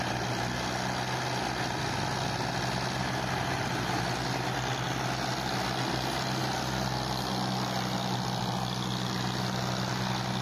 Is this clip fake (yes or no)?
no